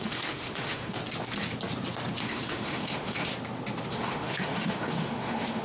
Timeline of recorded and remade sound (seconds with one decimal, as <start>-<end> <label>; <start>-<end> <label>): 0.0-1.0 remade; 1.0-2.2 recorded; 2.2-3.3 remade; 3.3-3.9 recorded; 3.9-5.6 remade